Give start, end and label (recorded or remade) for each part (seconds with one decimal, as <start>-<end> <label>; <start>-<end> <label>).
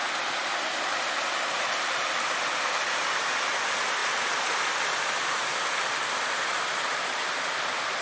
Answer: 0.0-8.0 remade